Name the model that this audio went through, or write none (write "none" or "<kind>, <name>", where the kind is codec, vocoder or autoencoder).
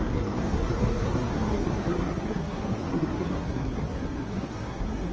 codec, SNAC